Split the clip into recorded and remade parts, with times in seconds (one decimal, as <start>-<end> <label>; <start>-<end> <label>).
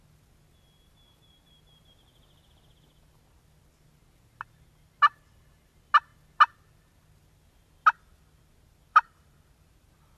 0.0-8.9 recorded; 8.9-9.7 remade; 9.7-10.2 recorded